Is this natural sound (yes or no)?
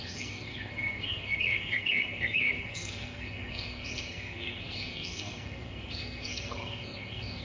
no